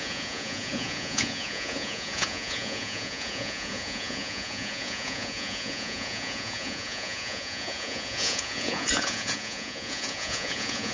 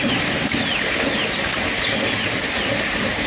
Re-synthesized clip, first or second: first